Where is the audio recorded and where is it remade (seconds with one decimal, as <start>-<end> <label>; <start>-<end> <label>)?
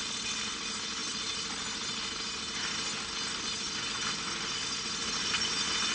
0.0-5.9 recorded